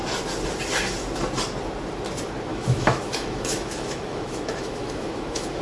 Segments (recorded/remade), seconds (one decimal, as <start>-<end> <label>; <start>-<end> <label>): 0.0-2.5 recorded; 2.5-5.6 remade